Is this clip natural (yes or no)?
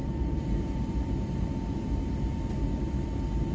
no